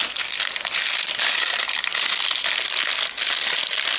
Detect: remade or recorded recorded